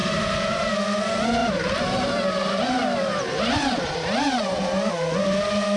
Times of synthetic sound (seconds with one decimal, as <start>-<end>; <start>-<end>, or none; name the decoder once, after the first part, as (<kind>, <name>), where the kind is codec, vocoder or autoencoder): 0.0-0.7 (vocoder, BigVGAN v2); 1.4-4.9

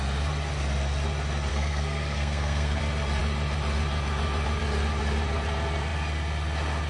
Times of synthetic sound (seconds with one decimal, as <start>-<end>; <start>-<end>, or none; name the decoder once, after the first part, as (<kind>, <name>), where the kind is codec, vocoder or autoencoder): 1.5-2.8 (codec, SNAC)

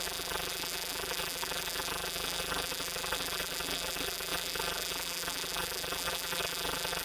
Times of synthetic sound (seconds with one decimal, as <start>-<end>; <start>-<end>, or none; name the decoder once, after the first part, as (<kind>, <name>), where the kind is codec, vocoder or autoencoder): 0.0-7.0 (vocoder, BigVGAN v2)

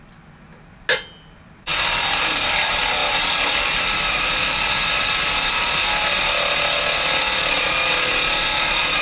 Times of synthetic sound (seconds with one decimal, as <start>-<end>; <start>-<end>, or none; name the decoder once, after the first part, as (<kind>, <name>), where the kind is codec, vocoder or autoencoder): none